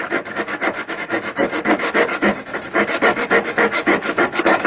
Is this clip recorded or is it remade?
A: remade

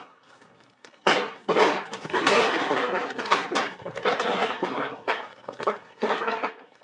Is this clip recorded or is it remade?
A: remade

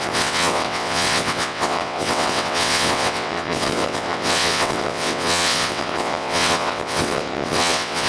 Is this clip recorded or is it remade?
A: remade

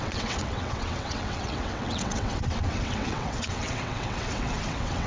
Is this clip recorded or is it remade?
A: remade